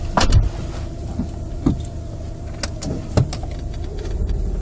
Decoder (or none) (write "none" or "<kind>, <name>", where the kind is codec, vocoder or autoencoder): none